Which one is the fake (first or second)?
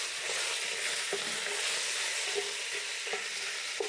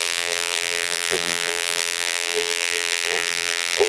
second